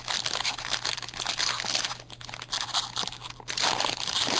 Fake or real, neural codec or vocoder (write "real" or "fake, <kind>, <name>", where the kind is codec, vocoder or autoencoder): real